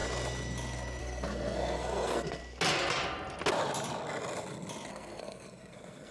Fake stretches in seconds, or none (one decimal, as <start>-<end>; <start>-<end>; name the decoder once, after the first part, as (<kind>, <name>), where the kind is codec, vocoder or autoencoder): 1.0-2.4 (codec, SNAC); 4.9-6.1